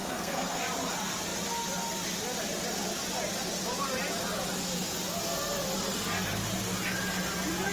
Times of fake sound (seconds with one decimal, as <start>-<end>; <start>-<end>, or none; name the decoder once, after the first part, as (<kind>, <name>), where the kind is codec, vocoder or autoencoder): 0.0-0.6 (codec, SNAC)